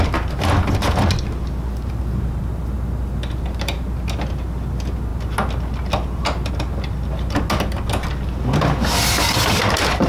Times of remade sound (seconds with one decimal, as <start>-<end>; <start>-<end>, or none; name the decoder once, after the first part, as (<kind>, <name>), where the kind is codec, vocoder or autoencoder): none